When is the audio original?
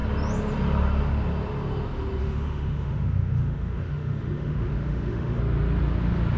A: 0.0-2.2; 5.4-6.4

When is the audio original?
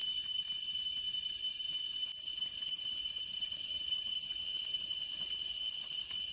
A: 0.0-6.3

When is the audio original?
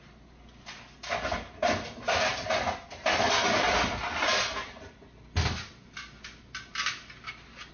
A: 0.0-7.7